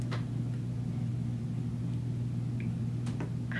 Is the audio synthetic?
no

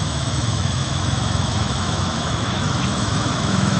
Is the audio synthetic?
yes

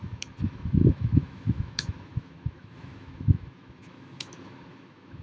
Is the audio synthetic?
yes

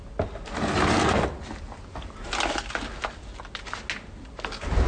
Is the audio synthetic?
no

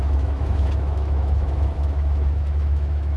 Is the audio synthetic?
yes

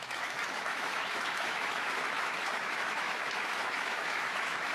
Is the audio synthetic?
yes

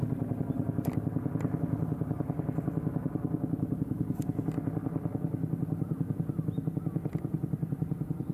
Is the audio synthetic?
no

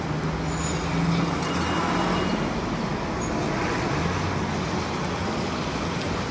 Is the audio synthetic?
no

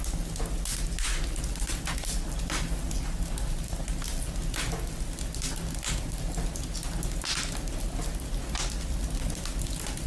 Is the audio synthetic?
no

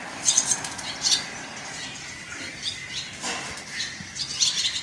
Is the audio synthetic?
no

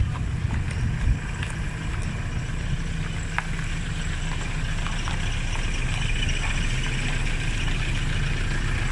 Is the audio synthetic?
no